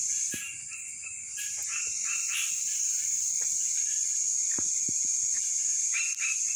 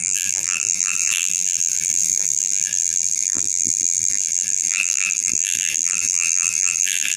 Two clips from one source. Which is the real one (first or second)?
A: first